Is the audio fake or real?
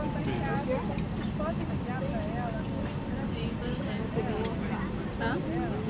real